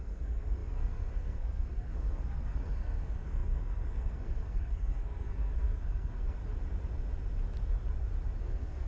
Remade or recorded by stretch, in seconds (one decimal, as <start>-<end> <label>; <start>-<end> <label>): 0.0-6.4 remade; 6.4-8.4 recorded; 8.4-8.9 remade